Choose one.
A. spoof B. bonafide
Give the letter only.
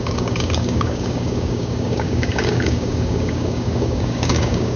A